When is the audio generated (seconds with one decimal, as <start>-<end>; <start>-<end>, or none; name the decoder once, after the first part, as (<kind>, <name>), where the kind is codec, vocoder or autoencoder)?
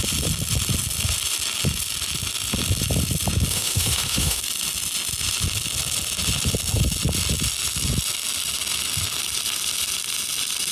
3.5-4.4 (autoencoder, DAC-VAE)